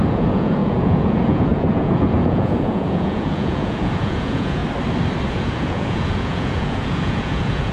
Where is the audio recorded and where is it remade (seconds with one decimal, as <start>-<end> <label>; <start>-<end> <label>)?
0.0-4.6 remade; 4.6-5.3 recorded; 5.3-7.7 remade